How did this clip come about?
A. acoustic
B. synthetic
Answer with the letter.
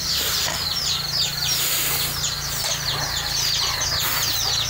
A